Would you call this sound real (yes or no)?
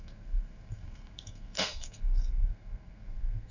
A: no